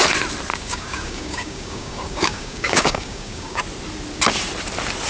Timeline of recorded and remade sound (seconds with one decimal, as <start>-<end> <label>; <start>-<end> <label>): 0.0-0.5 recorded; 0.5-3.6 remade; 3.6-5.1 recorded